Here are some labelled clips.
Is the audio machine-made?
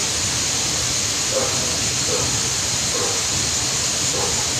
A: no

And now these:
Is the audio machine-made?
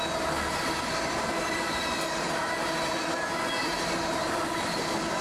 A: no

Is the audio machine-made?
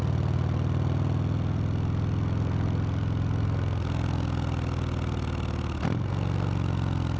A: no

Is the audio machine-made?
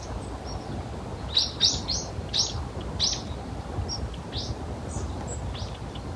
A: no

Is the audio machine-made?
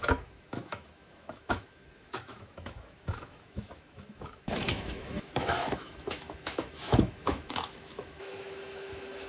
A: yes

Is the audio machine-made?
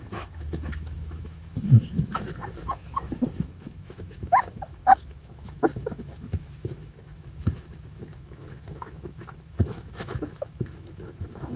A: yes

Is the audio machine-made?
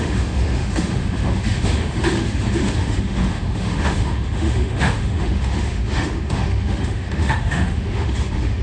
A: yes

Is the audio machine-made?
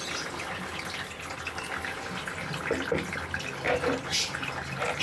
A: no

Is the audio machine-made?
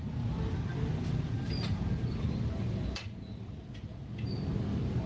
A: no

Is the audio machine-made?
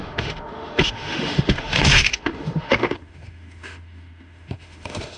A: yes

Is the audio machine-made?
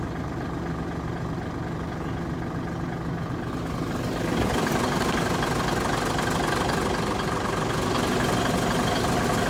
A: no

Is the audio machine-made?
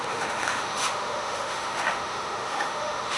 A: yes